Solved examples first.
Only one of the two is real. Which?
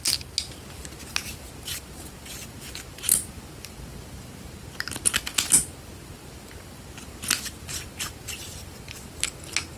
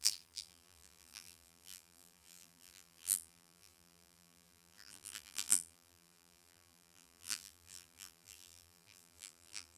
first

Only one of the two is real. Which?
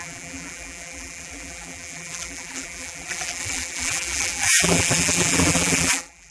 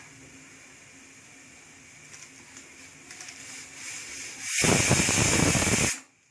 second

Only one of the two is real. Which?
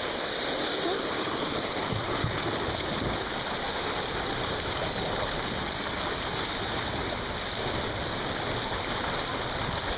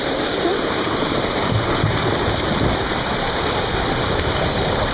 first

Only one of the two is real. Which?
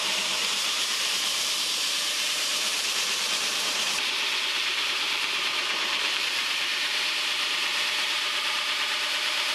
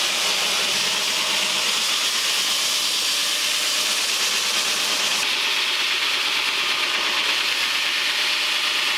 second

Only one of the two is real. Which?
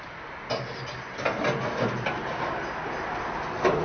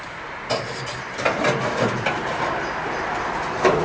first